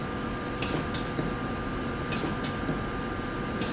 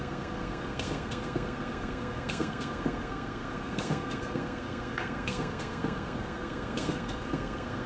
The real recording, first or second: first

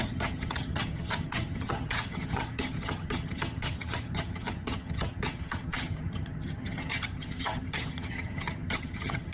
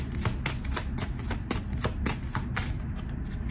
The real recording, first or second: second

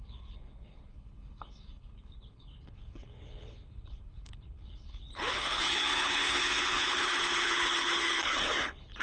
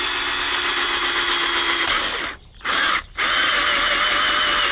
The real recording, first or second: second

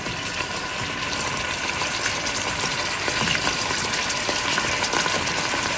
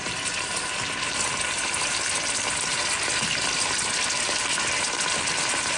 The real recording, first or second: second